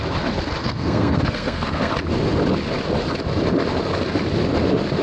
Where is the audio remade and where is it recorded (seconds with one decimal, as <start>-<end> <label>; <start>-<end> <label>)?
0.0-0.6 recorded; 0.6-1.9 remade; 1.9-5.0 recorded

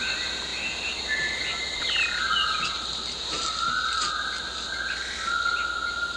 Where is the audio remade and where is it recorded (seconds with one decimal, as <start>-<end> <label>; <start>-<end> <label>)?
0.0-6.2 recorded

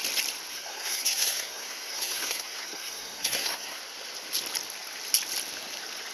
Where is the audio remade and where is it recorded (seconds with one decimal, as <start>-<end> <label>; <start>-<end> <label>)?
0.0-0.5 recorded; 0.5-3.8 remade; 3.8-6.1 recorded

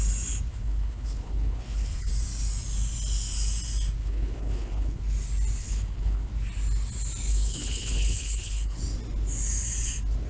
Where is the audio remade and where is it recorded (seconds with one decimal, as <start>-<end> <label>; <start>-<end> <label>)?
0.0-0.5 recorded; 0.5-2.1 remade; 2.1-4.0 recorded; 4.0-5.0 remade; 5.0-5.6 recorded; 5.6-6.3 remade; 6.3-7.3 recorded; 7.3-8.8 remade; 8.8-10.3 recorded